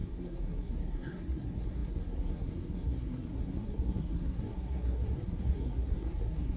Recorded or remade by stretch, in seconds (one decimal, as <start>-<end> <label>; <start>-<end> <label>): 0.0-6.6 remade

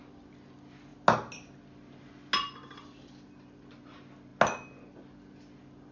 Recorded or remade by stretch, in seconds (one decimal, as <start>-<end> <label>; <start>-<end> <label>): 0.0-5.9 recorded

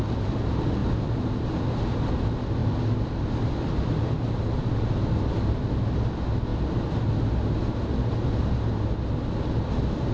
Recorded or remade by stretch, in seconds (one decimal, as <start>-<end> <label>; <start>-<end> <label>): 0.0-10.1 recorded

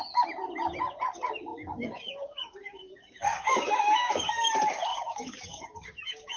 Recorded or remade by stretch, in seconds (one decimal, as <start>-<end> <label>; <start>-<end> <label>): 0.0-1.5 recorded; 1.5-4.5 remade; 4.5-4.9 recorded; 4.9-6.4 remade